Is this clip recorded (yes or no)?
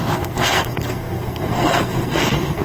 no